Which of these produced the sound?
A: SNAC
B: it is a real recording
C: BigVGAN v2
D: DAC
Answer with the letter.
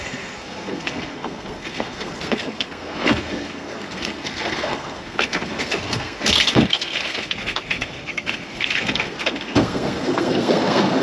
A